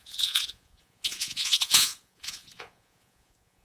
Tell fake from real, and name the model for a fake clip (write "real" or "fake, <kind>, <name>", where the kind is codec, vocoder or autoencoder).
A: fake, vocoder, Vocos